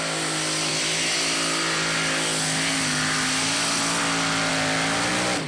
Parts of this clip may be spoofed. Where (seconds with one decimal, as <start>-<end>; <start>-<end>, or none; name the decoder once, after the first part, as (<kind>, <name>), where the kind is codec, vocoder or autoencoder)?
none